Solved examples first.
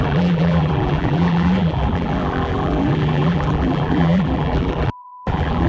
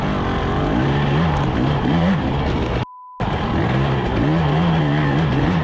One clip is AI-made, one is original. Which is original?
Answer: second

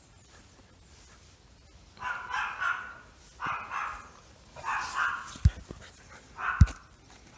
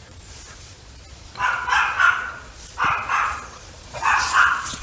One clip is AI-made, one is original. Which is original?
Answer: first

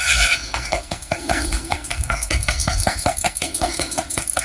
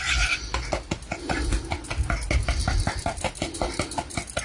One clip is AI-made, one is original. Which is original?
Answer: second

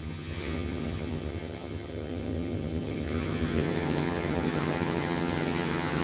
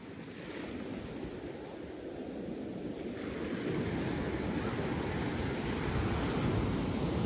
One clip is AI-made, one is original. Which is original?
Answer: second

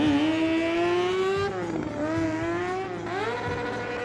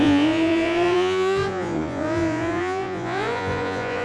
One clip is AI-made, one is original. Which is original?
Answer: first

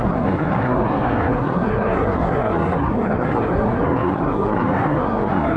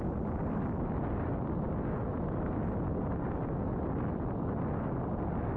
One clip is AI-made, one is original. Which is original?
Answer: second